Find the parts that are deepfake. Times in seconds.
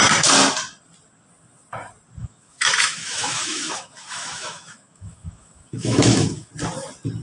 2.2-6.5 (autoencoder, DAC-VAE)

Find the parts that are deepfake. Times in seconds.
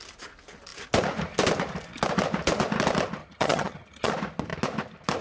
3.2-4.1 (vocoder, HiFi-GAN)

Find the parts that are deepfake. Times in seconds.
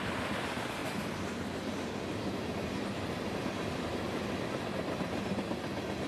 none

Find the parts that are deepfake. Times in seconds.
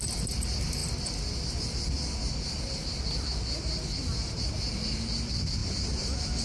0.8-1.5 (vocoder, BigVGAN v2); 5.6-6.4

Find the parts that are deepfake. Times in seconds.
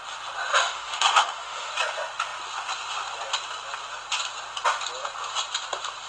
0.5-1.7 (autoencoder, DAC-VAE)